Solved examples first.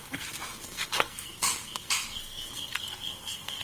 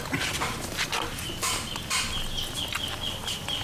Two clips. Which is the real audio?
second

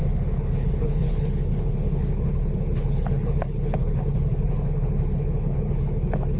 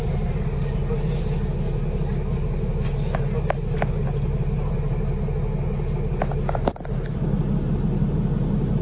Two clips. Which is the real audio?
second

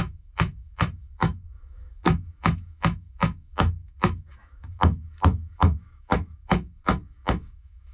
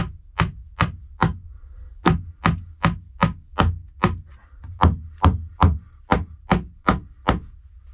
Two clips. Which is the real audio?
second